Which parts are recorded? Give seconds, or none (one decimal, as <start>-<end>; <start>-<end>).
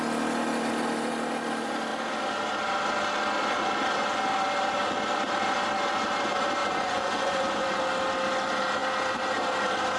0.0-6.6; 7.8-10.0